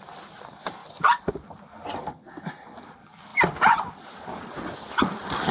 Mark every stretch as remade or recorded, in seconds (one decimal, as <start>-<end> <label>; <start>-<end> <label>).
0.0-5.5 recorded